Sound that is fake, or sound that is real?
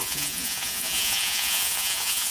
fake